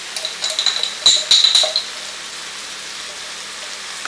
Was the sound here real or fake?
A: real